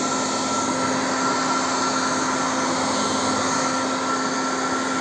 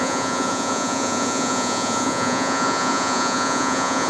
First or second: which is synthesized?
second